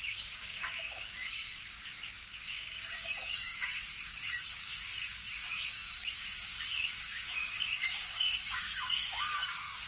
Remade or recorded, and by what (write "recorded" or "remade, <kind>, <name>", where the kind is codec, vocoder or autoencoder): remade, codec, DAC